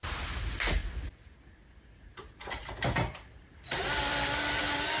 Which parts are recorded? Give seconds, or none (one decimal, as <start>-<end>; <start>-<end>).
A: 0.0-2.6; 4.6-5.0

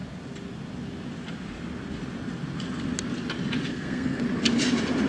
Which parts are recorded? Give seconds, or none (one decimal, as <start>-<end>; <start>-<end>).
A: 0.0-3.7; 4.2-5.1

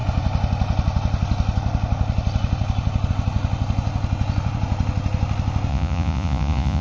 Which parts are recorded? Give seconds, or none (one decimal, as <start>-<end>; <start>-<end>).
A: 0.0-5.7